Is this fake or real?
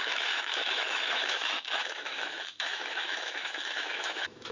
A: fake